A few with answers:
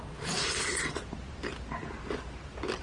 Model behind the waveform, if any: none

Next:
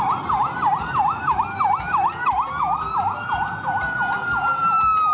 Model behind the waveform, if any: none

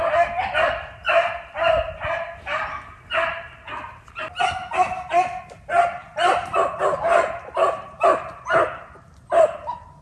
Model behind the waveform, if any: none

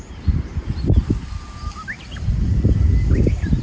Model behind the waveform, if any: none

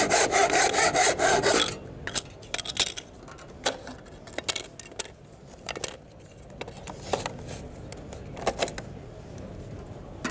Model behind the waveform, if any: none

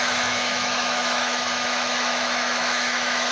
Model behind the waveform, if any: autoencoder, DAC-VAE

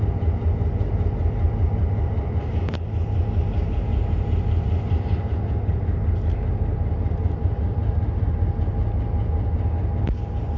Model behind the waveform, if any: none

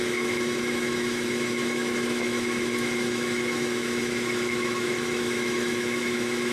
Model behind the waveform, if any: autoencoder, DAC-VAE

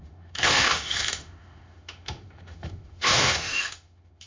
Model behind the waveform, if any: autoencoder, DAC-VAE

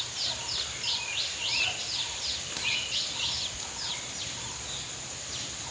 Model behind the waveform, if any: none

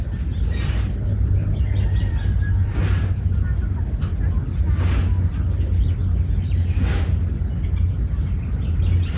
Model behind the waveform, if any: none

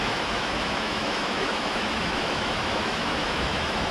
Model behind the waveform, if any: autoencoder, DAC-VAE